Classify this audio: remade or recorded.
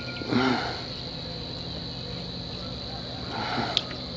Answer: recorded